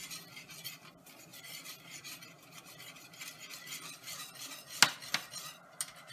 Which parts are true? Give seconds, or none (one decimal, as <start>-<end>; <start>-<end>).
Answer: 0.0-1.3; 3.3-6.1